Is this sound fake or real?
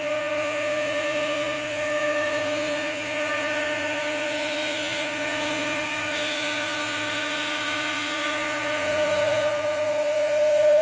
fake